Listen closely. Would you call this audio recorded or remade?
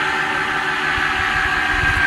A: recorded